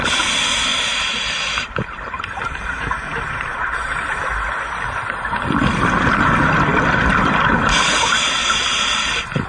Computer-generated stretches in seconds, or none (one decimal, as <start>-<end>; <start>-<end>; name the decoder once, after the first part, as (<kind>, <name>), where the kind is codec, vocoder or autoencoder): 0.7-4.2 (vocoder, BigVGAN v2)